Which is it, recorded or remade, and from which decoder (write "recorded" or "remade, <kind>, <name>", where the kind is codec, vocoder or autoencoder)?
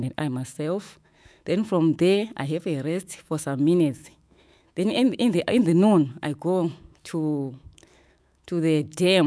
remade, autoencoder, DAC-VAE